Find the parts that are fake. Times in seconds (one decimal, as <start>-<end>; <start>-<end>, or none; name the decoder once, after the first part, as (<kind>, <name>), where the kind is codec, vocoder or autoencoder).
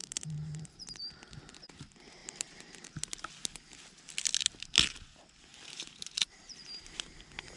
0.0-1.0 (vocoder, BigVGAN v2); 2.2-2.9; 5.5-6.6